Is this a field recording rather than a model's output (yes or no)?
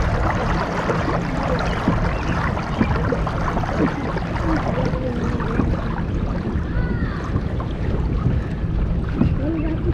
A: yes